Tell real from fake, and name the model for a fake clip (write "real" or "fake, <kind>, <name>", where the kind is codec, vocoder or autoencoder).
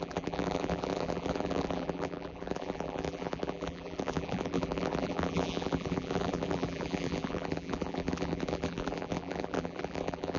fake, vocoder, BigVGAN v2